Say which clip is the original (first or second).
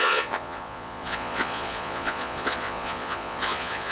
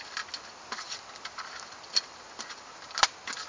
second